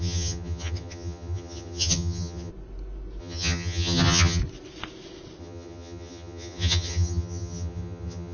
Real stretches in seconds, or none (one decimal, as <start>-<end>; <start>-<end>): 2.5-3.2; 4.4-5.4